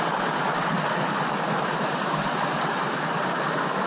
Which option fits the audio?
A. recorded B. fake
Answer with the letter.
A